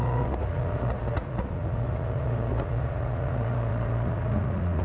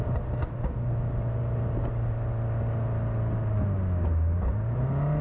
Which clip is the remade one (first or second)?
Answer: first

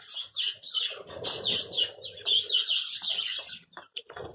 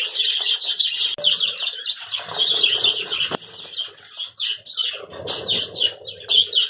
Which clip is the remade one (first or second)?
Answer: first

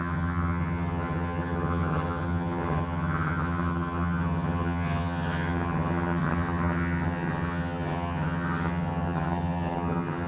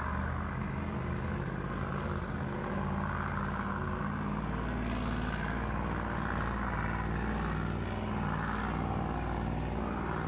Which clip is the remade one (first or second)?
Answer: first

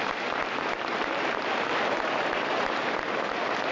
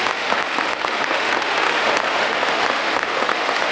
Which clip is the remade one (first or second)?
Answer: second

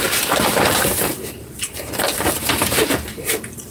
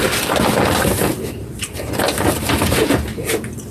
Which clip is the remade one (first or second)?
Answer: first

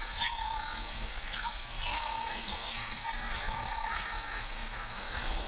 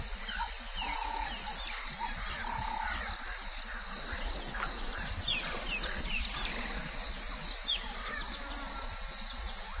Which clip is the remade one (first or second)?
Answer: first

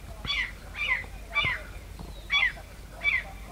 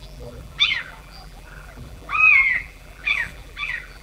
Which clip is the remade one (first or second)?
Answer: second